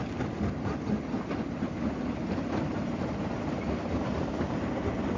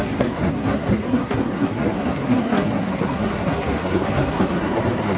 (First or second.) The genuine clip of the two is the first